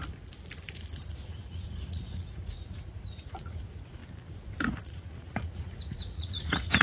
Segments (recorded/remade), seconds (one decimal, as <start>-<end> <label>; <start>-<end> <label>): 0.0-1.0 recorded; 1.0-4.0 remade; 4.0-4.7 recorded; 4.7-6.8 remade